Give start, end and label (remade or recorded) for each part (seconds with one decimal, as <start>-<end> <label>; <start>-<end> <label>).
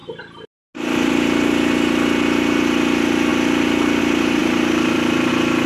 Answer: 0.0-4.4 recorded; 4.4-5.3 remade; 5.3-5.7 recorded